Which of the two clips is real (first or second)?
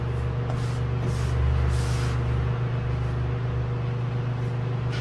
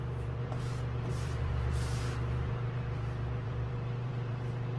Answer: first